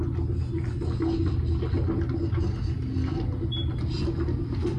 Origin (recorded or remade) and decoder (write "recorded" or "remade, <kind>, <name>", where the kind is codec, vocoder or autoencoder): recorded